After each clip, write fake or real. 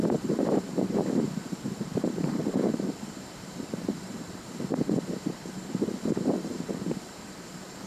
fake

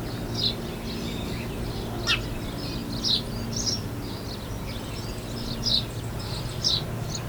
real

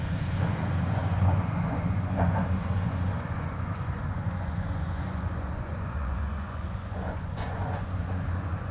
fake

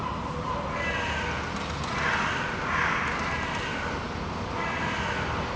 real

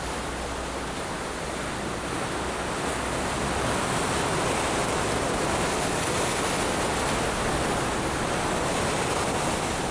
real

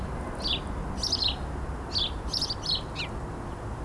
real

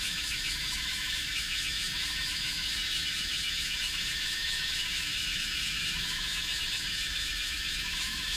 fake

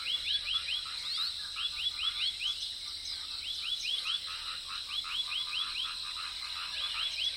real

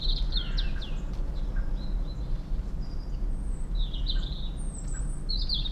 real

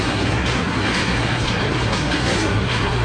fake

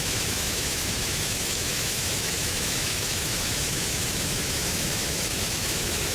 fake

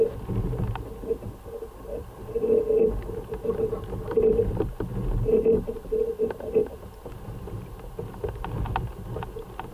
real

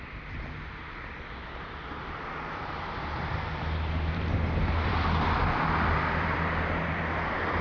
fake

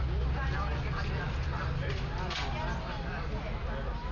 real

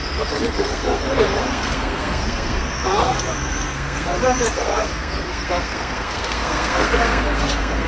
fake